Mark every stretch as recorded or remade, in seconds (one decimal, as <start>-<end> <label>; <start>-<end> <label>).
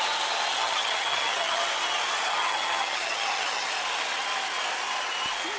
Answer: 0.0-0.5 recorded; 0.5-1.6 remade; 1.6-2.4 recorded; 2.4-3.7 remade; 3.7-5.6 recorded